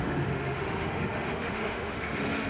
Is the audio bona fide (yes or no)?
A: no